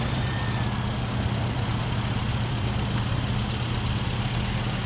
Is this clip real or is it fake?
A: real